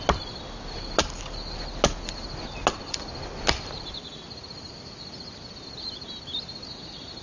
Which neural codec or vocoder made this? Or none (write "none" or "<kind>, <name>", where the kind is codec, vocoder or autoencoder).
none